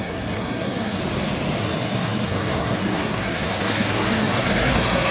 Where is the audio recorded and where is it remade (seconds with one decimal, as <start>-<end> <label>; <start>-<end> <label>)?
0.0-1.0 remade; 1.0-1.6 recorded; 1.6-5.1 remade